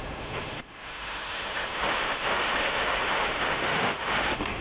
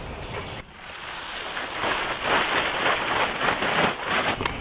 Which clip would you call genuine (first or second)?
second